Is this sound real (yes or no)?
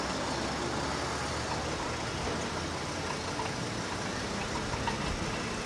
yes